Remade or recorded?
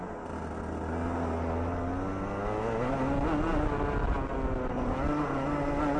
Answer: recorded